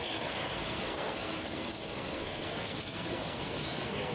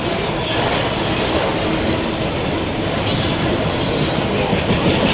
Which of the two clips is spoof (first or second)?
first